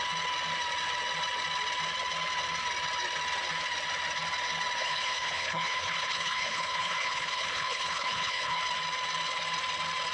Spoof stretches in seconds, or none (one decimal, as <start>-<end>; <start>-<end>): 4.8-8.6